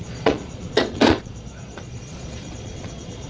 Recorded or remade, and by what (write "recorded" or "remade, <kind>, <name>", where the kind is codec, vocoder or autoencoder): remade, vocoder, Vocos